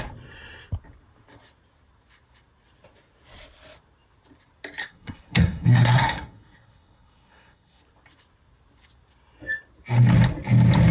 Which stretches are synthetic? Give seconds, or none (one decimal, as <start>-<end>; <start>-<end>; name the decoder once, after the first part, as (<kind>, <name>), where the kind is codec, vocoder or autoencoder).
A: 4.8-7.8 (codec, SNAC)

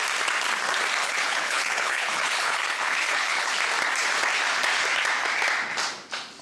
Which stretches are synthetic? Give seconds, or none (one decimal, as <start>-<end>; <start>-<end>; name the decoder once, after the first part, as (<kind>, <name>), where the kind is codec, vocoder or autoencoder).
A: 1.0-3.5 (codec, HILCodec)

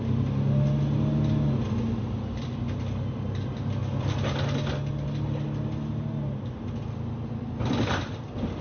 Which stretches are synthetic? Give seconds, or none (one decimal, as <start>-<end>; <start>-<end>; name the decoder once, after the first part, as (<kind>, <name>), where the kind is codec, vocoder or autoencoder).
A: none

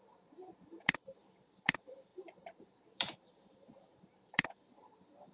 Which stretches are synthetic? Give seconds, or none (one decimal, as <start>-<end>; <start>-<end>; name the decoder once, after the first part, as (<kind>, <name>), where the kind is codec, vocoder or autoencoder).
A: 0.0-5.3 (vocoder, BigVGAN v2)

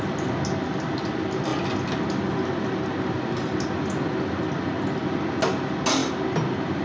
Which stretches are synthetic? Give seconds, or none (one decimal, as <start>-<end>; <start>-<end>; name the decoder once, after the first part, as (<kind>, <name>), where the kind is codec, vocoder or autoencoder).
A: none

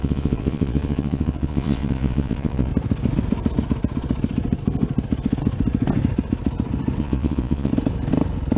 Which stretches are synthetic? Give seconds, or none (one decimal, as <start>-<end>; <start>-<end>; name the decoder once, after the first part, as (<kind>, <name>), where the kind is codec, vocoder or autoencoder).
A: 0.0-2.7 (vocoder, Vocos); 7.0-7.7

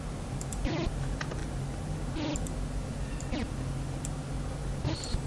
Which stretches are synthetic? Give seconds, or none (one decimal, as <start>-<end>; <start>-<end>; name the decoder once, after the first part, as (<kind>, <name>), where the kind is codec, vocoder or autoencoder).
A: none